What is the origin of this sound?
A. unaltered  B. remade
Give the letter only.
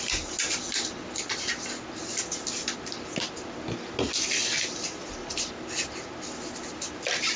A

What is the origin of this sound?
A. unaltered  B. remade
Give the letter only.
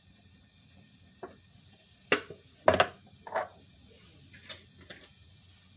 A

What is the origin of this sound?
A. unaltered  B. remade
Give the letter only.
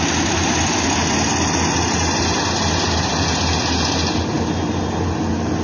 A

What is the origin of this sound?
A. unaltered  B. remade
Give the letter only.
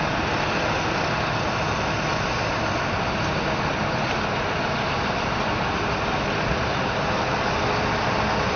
A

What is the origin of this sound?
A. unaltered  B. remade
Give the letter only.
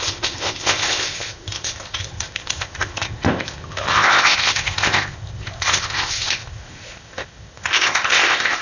B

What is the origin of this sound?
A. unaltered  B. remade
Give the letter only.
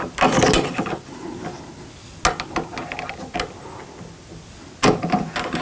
A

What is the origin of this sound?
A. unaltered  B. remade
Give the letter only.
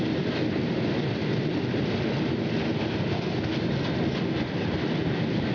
A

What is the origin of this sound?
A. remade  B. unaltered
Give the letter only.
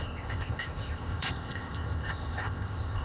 A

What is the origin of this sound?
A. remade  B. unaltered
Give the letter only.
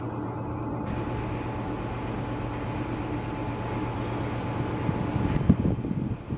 B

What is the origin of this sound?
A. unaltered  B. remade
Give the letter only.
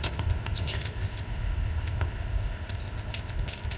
B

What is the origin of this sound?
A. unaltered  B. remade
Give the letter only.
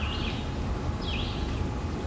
A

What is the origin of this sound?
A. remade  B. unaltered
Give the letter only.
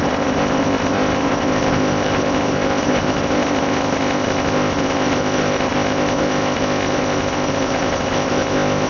A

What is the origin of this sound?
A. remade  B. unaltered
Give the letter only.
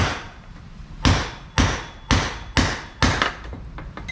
B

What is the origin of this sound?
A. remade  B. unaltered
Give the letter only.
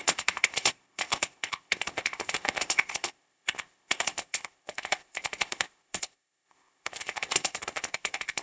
A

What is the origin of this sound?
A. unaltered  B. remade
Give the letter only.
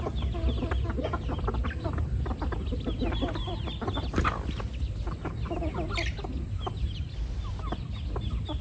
A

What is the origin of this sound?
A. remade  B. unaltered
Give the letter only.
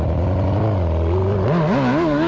B